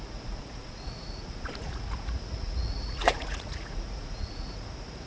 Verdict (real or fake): fake